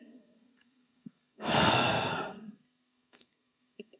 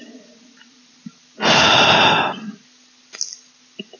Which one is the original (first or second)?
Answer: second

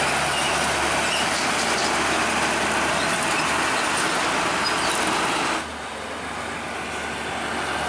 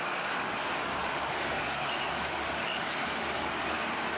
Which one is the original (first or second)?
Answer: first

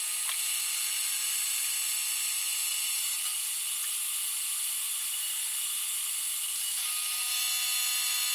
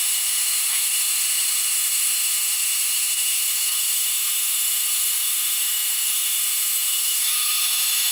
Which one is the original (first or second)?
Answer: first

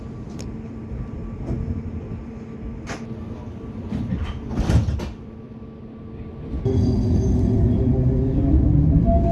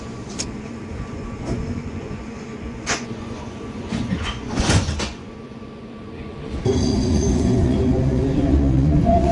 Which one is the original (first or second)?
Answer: first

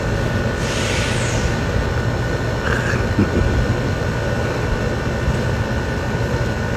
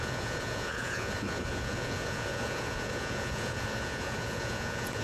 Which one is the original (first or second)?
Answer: first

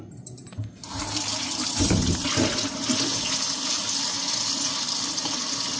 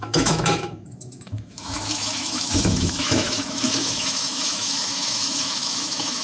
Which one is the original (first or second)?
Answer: first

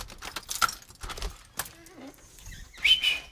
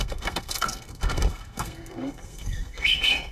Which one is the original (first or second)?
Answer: first